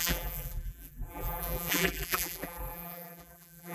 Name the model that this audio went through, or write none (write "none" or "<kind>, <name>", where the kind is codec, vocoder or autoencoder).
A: vocoder, BigVGAN v2